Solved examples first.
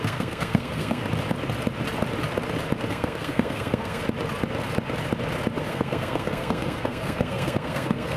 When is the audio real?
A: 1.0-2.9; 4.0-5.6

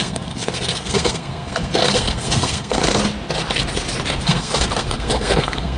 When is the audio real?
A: 2.8-4.2

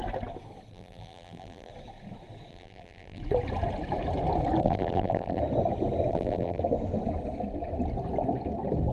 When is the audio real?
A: 0.0-0.7; 1.7-2.5; 3.2-4.6; 5.4-6.1; 6.6-8.9

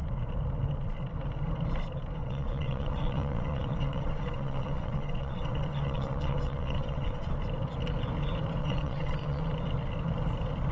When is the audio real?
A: 0.0-2.2; 7.3-8.6; 9.4-10.7

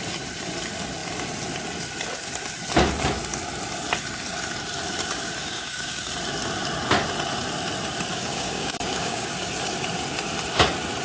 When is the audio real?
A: 0.0-5.4; 6.1-8.1; 9.3-11.0

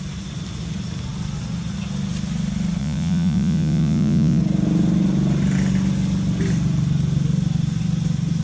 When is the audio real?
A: 0.0-2.8; 4.4-8.4

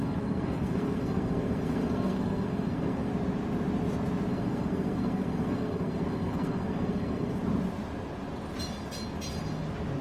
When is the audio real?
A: 3.1-4.3; 7.4-10.0